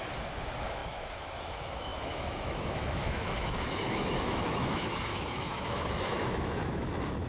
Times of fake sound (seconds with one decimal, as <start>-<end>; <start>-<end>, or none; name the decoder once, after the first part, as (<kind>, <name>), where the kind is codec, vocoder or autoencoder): 0.0-7.3 (autoencoder, DAC-VAE)